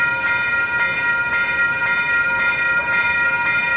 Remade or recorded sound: recorded